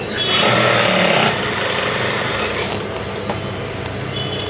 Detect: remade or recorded recorded